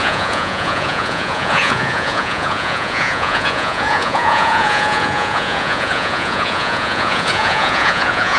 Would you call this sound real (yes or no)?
no